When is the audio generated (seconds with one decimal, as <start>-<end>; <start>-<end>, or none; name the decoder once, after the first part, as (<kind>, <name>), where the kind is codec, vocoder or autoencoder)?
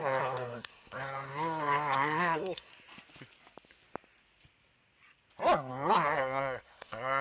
0.0-2.7 (codec, SNAC); 5.7-7.2